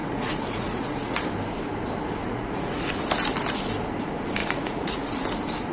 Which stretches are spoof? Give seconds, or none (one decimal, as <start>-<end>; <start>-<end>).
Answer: 0.0-1.2; 2.2-2.9; 4.4-5.1